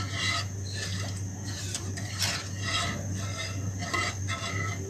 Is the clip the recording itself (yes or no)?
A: yes